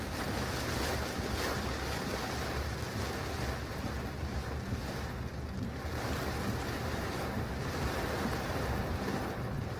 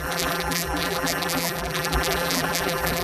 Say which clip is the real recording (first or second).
first